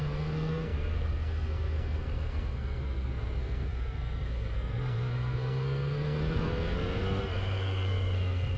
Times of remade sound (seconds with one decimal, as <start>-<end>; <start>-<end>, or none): 0.0-8.6